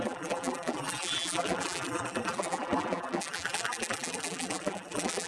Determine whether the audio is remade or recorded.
remade